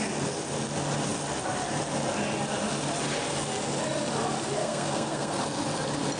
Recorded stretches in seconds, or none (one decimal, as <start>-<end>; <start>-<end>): 0.0-4.6; 5.4-6.2